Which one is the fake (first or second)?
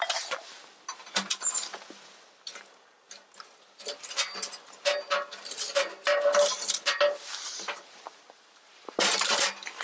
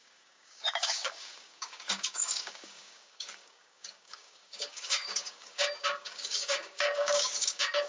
second